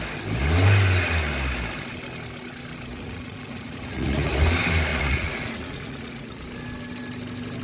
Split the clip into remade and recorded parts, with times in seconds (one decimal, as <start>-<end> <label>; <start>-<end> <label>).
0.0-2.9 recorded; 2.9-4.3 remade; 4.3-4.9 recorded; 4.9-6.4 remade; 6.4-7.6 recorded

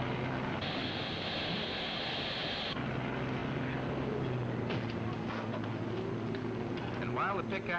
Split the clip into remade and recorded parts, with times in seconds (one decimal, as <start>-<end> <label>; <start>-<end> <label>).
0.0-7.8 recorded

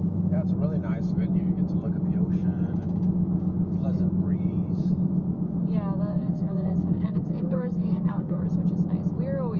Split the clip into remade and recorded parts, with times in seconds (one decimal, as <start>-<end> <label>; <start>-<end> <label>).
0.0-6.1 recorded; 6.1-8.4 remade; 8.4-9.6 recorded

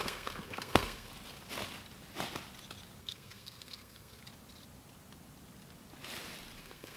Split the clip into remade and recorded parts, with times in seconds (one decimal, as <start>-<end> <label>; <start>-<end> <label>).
0.0-1.1 remade; 1.1-3.0 recorded; 3.0-4.2 remade; 4.2-6.6 recorded; 6.6-7.0 remade